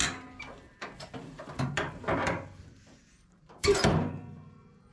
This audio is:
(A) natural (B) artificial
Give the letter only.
B